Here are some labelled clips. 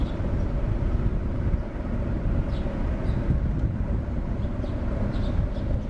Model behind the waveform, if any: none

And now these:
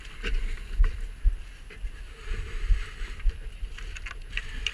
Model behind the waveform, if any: none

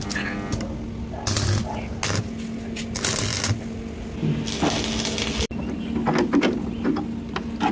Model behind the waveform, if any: none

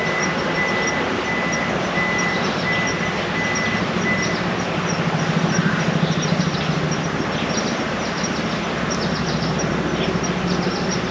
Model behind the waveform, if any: none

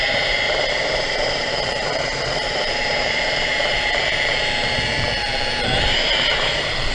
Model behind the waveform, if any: vocoder, BigVGAN v2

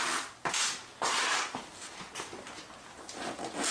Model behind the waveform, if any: none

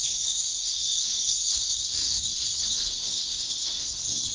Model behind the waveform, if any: codec, SNAC